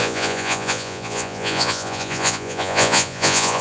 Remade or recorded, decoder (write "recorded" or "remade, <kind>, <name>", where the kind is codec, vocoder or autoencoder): remade, vocoder, Vocos